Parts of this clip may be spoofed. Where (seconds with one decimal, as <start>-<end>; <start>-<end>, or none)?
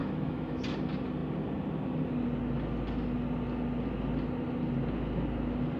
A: 0.0-0.6